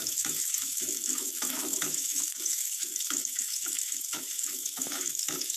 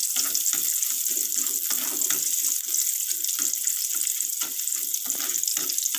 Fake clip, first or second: first